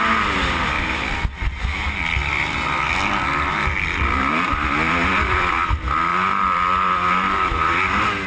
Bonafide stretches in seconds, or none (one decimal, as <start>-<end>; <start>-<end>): 0.0-8.3